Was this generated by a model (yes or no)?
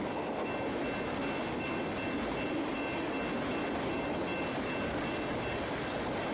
no